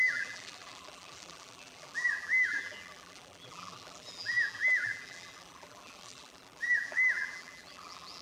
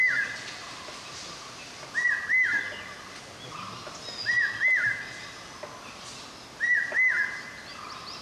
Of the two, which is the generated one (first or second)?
first